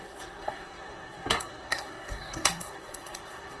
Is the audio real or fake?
fake